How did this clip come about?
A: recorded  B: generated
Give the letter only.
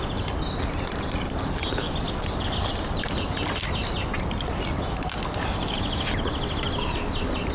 A